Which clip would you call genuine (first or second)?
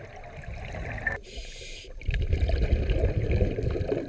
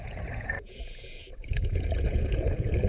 first